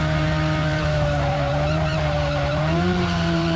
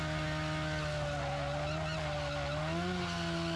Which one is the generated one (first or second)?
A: first